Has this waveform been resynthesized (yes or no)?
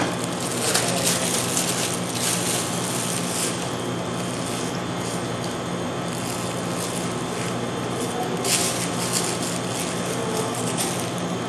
no